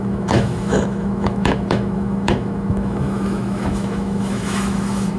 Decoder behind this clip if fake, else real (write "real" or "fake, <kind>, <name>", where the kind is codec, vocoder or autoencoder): fake, autoencoder, DAC-VAE